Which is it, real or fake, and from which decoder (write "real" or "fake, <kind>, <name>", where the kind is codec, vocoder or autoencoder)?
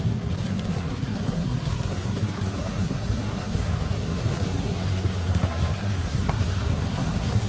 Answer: fake, codec, SNAC